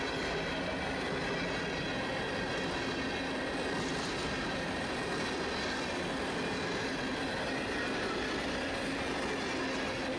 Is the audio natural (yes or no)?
yes